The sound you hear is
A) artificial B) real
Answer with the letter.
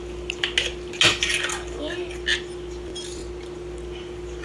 B